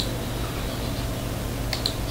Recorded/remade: recorded